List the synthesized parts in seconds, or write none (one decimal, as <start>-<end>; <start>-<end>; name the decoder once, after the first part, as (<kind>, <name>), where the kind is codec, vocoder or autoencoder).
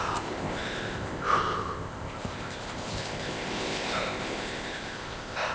0.0-5.5 (codec, ZipCodec)